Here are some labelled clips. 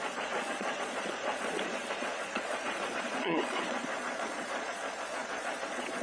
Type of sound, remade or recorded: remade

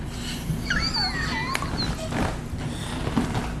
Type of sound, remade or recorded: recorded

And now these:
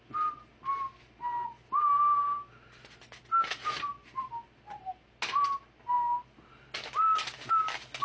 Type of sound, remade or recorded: recorded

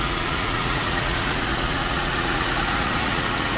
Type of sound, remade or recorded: remade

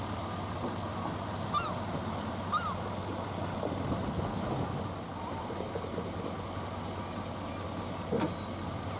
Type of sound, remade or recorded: recorded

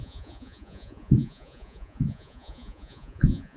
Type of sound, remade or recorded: remade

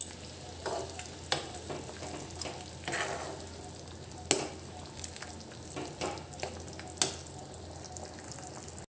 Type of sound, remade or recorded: recorded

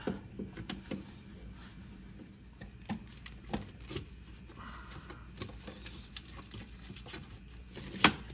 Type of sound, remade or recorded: recorded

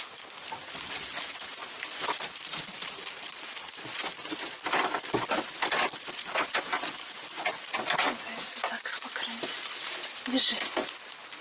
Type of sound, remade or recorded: recorded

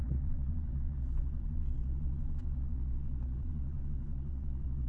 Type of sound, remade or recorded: remade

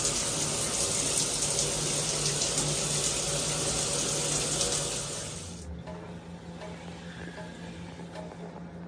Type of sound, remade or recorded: recorded